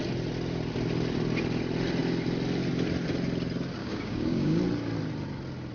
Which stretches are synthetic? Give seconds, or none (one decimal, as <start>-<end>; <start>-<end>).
3.8-4.6